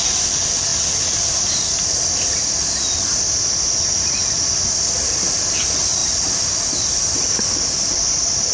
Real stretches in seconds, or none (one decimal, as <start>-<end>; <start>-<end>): 0.0-8.5